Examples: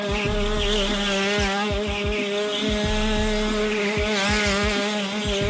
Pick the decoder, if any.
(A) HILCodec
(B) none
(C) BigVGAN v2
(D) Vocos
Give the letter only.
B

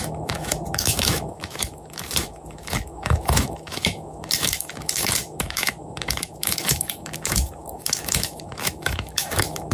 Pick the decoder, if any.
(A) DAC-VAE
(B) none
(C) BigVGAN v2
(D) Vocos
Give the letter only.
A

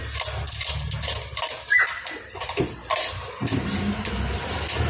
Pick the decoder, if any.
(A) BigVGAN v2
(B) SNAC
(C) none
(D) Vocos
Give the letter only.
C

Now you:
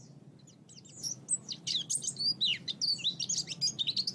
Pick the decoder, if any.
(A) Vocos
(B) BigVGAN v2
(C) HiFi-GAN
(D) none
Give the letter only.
D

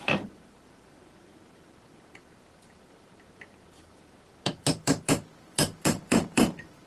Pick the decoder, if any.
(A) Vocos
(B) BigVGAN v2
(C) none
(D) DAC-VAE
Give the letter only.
B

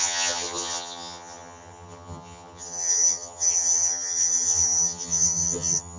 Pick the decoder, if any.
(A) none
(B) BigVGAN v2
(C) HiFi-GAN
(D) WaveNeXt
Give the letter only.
C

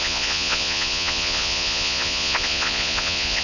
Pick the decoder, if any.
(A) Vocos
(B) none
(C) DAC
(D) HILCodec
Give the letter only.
A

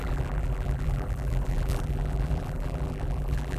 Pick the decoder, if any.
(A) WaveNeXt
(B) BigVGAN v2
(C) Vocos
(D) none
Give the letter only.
B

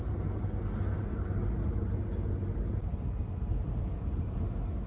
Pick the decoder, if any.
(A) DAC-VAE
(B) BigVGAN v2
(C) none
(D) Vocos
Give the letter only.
C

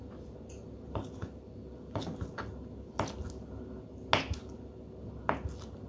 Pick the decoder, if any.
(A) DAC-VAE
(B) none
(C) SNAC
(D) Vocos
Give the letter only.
B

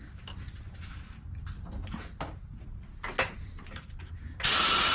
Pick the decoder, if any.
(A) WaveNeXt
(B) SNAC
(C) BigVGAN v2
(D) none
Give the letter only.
D